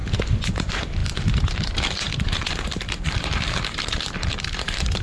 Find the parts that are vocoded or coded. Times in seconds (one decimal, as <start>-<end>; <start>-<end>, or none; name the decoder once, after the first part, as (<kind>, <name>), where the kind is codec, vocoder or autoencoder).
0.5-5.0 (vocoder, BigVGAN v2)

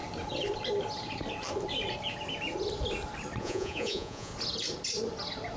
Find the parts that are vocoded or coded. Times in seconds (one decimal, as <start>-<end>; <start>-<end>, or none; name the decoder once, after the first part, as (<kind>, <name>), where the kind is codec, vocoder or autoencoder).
3.4-4.3 (vocoder, Vocos)

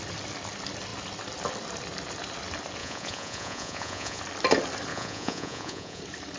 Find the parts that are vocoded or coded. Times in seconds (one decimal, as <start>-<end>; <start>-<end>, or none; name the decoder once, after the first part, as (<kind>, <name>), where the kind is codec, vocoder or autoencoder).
2.8-4.2 (vocoder, Vocos); 4.9-6.0

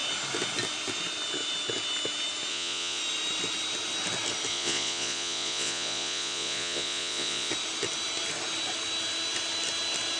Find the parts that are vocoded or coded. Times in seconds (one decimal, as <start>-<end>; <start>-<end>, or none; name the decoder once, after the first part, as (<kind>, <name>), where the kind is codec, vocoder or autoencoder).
2.5-3.0 (vocoder, Vocos); 4.5-7.5

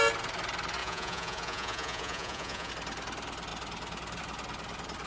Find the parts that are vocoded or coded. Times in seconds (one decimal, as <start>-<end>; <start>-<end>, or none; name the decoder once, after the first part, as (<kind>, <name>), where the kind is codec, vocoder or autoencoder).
0.8-2.7 (vocoder, Vocos)

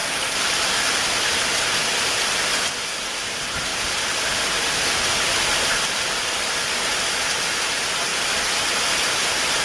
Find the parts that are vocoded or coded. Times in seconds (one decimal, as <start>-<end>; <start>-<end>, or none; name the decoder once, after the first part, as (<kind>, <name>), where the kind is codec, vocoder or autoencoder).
0.0-3.7 (vocoder, BigVGAN v2); 6.2-9.6

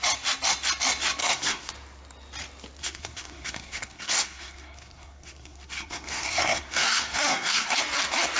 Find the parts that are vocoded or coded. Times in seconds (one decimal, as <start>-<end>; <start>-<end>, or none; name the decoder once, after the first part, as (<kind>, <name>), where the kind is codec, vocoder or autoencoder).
1.2-1.7 (codec, SNAC); 2.8-7.8

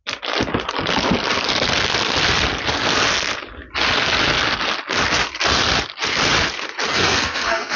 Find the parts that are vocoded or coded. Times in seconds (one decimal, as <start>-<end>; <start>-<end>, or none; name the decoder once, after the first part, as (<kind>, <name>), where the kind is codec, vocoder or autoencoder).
6.9-7.8 (codec, SNAC)